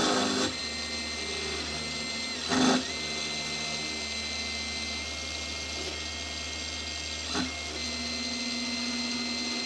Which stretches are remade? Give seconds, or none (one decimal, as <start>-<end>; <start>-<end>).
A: none